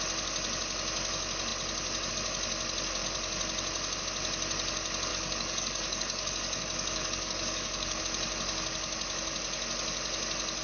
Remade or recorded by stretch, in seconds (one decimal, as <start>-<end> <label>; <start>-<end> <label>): 0.0-5.1 recorded; 5.1-8.0 remade; 8.0-10.6 recorded